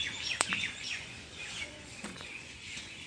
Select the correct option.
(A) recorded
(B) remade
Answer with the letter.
B